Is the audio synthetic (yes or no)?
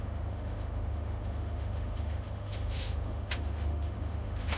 yes